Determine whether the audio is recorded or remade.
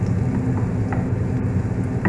recorded